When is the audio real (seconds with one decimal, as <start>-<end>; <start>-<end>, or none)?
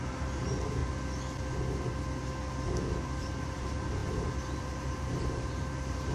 0.8-3.2